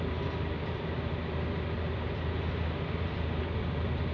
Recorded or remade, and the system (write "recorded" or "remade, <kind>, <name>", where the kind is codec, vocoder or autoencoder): remade, vocoder, BigVGAN v2